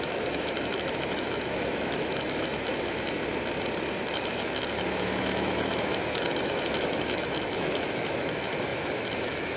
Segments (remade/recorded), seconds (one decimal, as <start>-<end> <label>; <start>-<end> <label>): 0.0-2.7 remade; 2.7-4.0 recorded; 4.0-9.6 remade